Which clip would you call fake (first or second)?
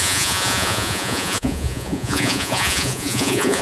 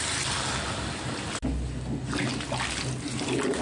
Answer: first